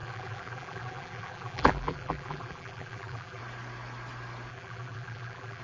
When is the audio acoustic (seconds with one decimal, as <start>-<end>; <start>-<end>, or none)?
3.4-4.5